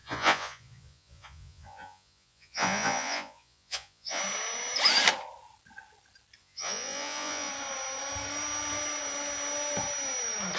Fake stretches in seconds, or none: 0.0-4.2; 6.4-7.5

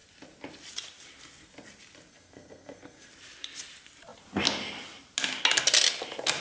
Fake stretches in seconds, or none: 2.1-3.1

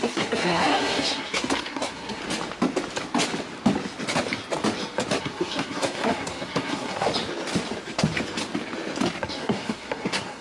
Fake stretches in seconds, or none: 0.0-2.2; 5.2-7.1; 9.3-10.4

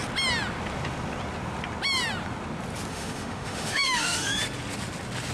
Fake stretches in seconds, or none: 2.9-4.4

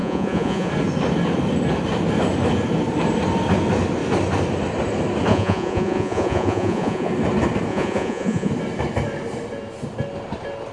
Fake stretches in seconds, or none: 0.0-0.7; 5.3-7.1; 7.7-8.5